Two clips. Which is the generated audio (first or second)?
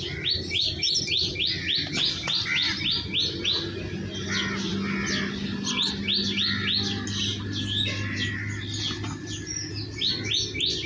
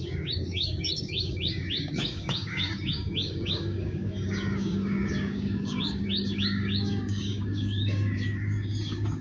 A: second